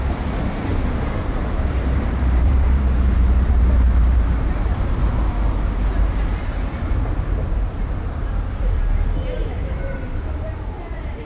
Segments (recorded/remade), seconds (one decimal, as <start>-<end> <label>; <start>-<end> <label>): 0.0-0.7 remade; 0.7-1.7 recorded; 1.7-5.0 remade; 5.0-7.5 recorded; 7.5-11.2 remade